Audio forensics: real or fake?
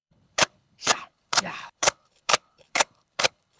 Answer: fake